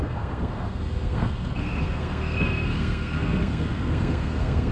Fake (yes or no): yes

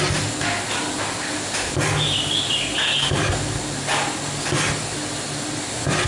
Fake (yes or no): no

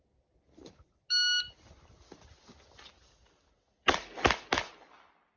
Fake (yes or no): no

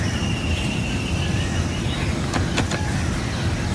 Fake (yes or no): no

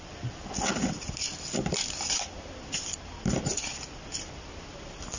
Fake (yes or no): no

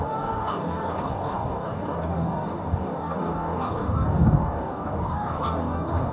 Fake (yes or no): yes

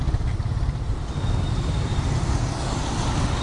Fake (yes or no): no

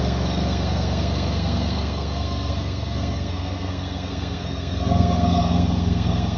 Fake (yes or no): yes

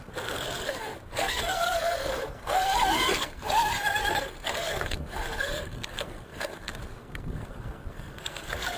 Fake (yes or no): yes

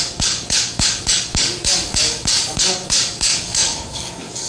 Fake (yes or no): yes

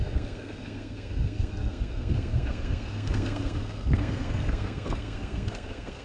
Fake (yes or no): yes